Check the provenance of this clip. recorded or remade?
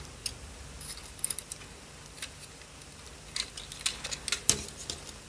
recorded